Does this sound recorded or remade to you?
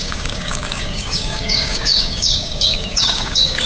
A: remade